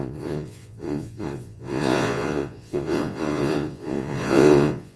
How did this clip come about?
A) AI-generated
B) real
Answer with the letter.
A